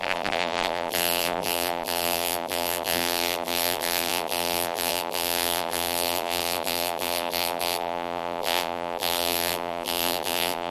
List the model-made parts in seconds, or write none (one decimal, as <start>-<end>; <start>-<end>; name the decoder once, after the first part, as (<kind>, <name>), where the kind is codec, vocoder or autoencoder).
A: 0.0-10.7 (vocoder, BigVGAN v2)